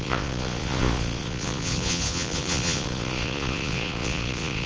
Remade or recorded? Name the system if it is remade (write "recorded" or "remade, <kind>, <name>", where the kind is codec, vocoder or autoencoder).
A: remade, vocoder, Vocos